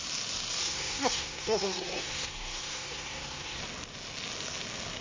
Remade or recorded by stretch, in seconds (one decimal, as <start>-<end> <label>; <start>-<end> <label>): 0.0-0.6 recorded; 0.6-3.6 remade; 3.6-5.0 recorded

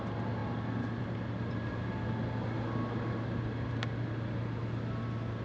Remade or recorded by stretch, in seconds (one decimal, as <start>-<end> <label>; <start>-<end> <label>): 0.0-5.4 recorded

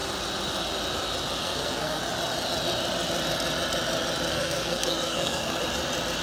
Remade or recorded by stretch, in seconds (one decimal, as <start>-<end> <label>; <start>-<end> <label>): 0.0-1.4 recorded; 1.4-2.0 remade; 2.0-4.3 recorded; 4.3-5.6 remade; 5.6-6.2 recorded

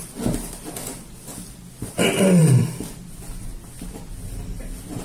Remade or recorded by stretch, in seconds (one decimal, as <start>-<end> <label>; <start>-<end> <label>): 0.0-5.0 recorded

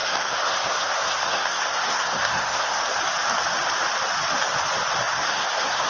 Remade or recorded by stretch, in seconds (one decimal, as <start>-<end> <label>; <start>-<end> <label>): 0.0-2.8 remade; 2.8-5.0 recorded; 5.0-5.9 remade